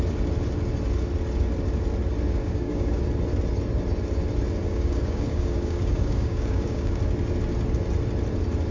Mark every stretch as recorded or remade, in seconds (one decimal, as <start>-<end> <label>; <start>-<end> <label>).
0.0-2.4 recorded; 2.4-3.0 remade; 3.0-4.6 recorded; 4.6-7.0 remade; 7.0-8.7 recorded